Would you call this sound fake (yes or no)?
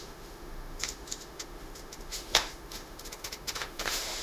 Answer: yes